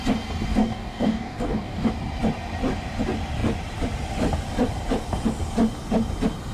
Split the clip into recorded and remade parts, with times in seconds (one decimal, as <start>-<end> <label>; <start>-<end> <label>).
0.0-0.5 recorded; 0.5-1.9 remade; 1.9-6.5 recorded

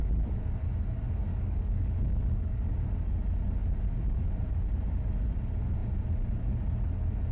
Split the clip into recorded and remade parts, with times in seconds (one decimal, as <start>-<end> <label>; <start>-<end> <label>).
0.0-1.3 recorded; 1.3-2.7 remade; 2.7-7.3 recorded

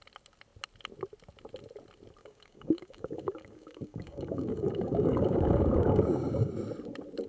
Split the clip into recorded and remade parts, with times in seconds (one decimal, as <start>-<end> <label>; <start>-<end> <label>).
0.0-2.2 recorded; 2.2-6.5 remade; 6.5-7.3 recorded

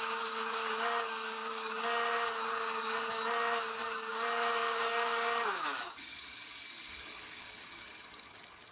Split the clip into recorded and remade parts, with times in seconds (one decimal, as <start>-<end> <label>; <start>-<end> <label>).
0.0-8.7 remade

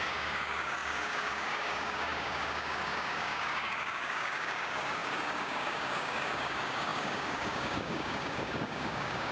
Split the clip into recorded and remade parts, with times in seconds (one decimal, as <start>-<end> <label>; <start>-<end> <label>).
0.0-9.3 remade